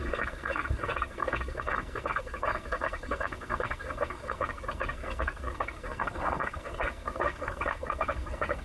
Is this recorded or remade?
remade